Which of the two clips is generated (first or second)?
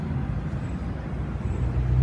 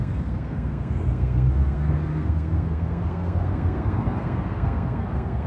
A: second